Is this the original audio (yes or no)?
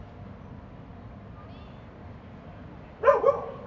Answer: yes